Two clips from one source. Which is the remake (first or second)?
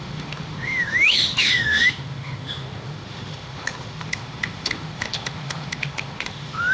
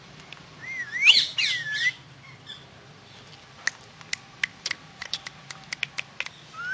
first